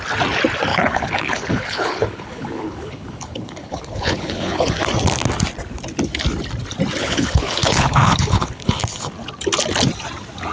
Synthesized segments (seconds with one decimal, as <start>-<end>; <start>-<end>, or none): 0.7-4.7; 7.0-9.1